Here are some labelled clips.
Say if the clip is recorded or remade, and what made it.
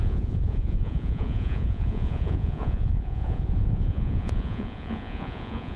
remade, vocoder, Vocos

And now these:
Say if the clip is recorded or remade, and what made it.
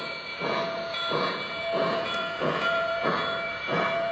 remade, vocoder, Vocos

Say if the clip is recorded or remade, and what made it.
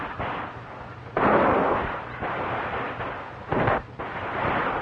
recorded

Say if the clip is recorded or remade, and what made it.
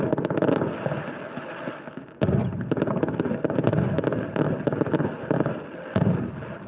recorded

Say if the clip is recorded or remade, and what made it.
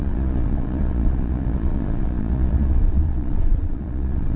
remade, vocoder, Vocos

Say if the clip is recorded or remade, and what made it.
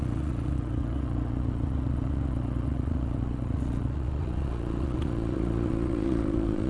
remade, vocoder, Vocos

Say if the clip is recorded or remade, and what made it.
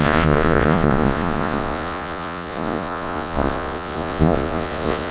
remade, vocoder, Vocos